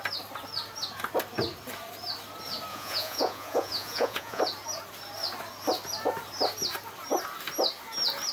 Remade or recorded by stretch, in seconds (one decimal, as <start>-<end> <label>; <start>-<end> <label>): 0.0-2.7 recorded; 2.7-4.4 remade; 4.4-8.3 recorded